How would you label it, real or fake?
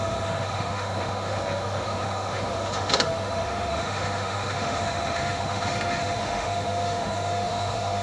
fake